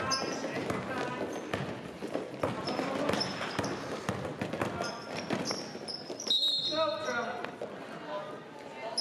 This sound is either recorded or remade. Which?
recorded